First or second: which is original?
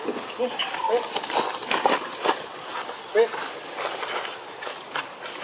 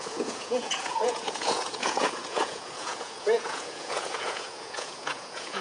first